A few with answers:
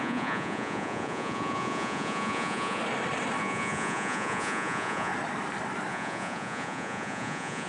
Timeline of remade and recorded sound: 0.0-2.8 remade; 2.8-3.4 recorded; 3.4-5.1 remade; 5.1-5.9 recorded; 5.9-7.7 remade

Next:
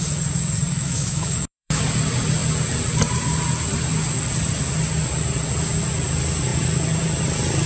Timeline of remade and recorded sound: 0.0-0.7 recorded; 0.7-1.8 remade; 1.8-7.7 recorded